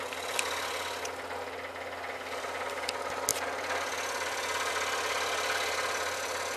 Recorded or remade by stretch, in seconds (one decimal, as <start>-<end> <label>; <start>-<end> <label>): 0.0-6.6 recorded